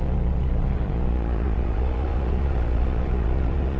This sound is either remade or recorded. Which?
remade